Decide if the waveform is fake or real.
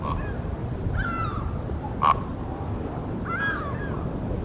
fake